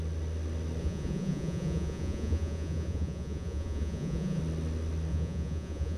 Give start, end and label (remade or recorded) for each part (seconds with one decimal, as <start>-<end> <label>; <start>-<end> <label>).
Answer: 0.0-0.8 recorded; 0.8-4.4 remade; 4.4-5.1 recorded; 5.1-6.0 remade